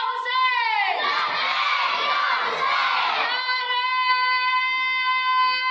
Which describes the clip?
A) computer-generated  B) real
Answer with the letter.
B